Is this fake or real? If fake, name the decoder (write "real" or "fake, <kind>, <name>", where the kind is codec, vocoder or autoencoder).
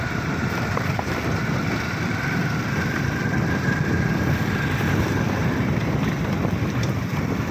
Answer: fake, vocoder, BigVGAN v2